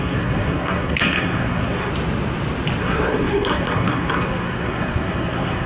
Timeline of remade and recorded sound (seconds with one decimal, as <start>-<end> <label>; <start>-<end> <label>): 0.0-1.9 remade; 1.9-2.8 recorded; 2.8-5.7 remade